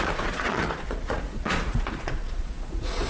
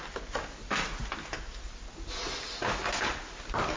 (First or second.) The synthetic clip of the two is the first